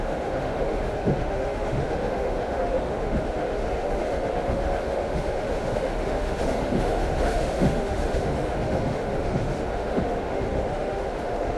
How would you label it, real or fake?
fake